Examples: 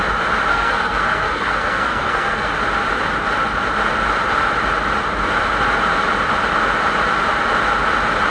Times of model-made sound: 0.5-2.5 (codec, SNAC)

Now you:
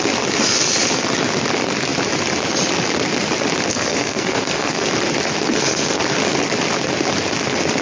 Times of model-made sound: 3.7-4.9 (codec, SNAC); 5.5-6.0

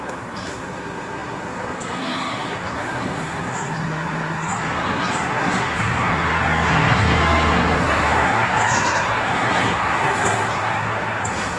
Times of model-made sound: 0.0-11.6 (codec, SNAC)

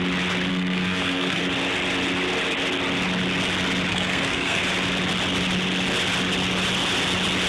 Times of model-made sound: 0.5-1.4 (codec, SNAC); 3.9-4.6